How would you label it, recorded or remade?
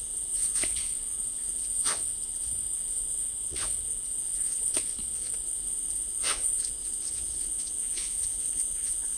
remade